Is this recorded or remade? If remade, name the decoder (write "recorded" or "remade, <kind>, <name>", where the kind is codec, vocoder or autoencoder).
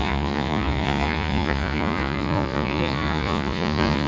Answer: remade, vocoder, Vocos